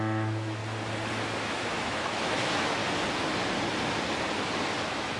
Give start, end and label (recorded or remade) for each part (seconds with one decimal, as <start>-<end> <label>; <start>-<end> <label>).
0.0-0.6 remade; 0.6-1.4 recorded; 1.4-2.8 remade; 2.8-4.8 recorded; 4.8-5.2 remade

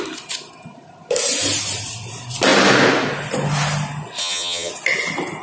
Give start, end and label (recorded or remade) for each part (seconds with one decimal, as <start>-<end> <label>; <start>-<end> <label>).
0.0-4.2 recorded; 4.2-4.7 remade; 4.7-5.4 recorded

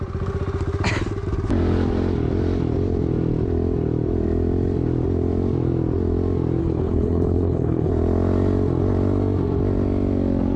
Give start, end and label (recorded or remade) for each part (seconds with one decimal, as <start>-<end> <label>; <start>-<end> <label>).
0.0-6.6 recorded; 6.6-7.9 remade; 7.9-10.6 recorded

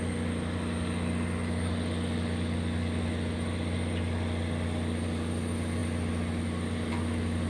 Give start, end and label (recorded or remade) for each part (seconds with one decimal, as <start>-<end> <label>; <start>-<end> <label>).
0.0-7.5 recorded

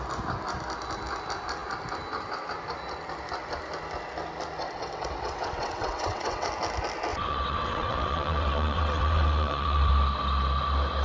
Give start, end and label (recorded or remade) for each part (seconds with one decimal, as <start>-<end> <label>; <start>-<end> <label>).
0.0-4.6 recorded; 4.6-6.5 remade; 6.5-7.1 recorded; 7.1-9.9 remade; 9.9-11.0 recorded

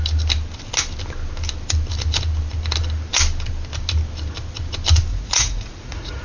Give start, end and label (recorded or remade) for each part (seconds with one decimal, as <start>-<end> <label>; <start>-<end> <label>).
0.0-5.1 recorded; 5.1-6.2 remade